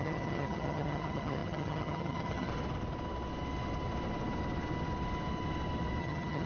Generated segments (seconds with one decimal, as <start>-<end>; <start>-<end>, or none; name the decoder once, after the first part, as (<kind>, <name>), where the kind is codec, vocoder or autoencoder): 0.0-2.5 (vocoder, HiFi-GAN); 6.0-6.5